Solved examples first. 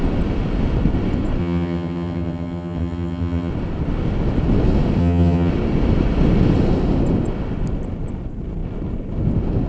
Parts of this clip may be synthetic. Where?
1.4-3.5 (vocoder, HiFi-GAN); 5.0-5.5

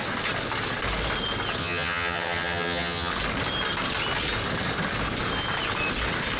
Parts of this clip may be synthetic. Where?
1.6-3.1 (vocoder, HiFi-GAN)